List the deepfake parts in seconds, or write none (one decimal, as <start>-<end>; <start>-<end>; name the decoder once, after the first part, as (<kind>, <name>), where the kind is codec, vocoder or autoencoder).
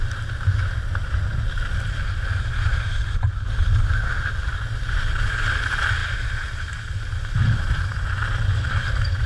none